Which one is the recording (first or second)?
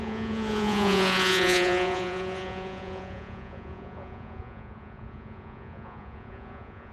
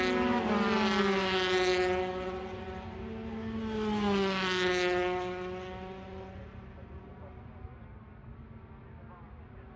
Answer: second